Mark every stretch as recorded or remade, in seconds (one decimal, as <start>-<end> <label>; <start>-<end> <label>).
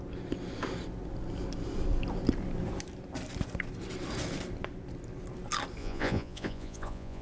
0.0-5.8 recorded; 5.8-7.2 remade